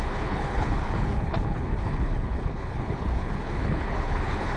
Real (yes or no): no